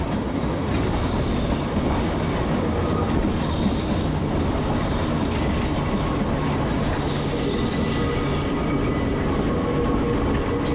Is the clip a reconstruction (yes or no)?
no